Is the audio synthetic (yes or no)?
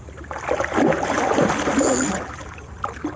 no